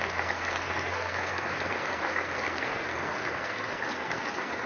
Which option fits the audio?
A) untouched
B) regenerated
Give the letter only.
B